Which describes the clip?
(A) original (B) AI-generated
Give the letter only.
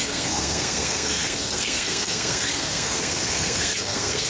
B